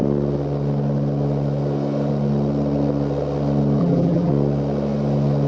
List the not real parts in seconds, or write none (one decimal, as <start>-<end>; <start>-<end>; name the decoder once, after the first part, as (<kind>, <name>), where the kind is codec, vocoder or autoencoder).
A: 3.8-4.3 (vocoder, BigVGAN v2)